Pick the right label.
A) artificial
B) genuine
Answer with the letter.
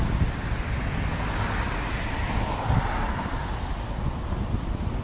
B